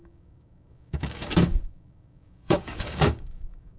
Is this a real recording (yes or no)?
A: no